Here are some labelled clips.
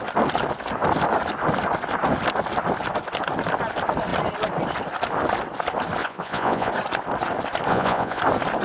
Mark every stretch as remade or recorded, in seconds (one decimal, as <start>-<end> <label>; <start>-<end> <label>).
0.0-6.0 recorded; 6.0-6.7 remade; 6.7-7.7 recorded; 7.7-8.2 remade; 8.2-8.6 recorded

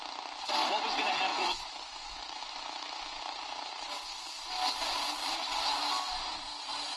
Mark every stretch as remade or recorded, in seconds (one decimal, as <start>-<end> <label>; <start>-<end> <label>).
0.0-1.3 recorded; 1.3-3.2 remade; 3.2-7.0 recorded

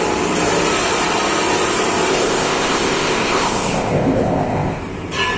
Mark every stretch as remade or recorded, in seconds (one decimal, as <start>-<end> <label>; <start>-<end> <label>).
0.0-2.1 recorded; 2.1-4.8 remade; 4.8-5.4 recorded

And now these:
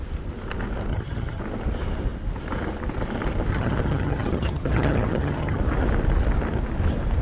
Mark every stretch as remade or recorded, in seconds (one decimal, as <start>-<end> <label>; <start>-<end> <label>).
0.0-0.9 recorded; 0.9-1.4 remade; 1.4-3.5 recorded; 3.5-5.6 remade; 5.6-7.2 recorded

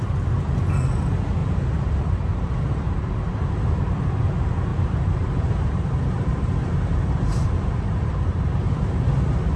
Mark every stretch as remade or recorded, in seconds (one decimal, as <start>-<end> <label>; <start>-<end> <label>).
0.0-1.4 recorded; 1.4-3.1 remade; 3.1-4.7 recorded; 4.7-9.1 remade; 9.1-9.6 recorded